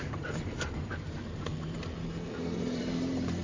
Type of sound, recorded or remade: remade